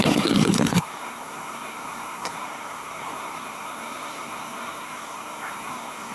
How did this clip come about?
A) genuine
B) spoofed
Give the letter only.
B